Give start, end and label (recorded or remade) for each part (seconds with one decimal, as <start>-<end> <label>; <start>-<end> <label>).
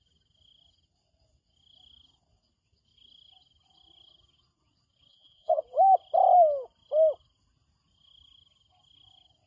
0.0-5.1 recorded; 5.1-5.6 remade; 5.6-9.5 recorded